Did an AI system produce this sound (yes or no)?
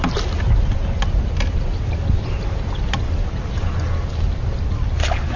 no